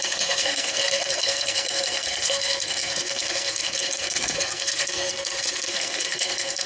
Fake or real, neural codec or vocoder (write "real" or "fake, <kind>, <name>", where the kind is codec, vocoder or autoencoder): fake, codec, SNAC